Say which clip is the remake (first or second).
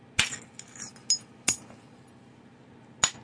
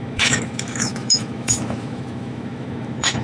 second